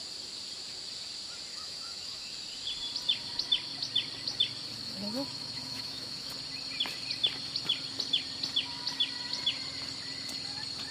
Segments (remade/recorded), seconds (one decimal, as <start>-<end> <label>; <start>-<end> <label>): 0.0-1.5 recorded; 1.5-2.3 remade; 2.3-4.8 recorded; 4.8-6.3 remade; 6.3-10.9 recorded